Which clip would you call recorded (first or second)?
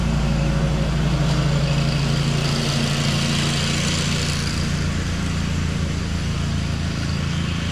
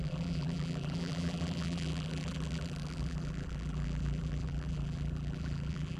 first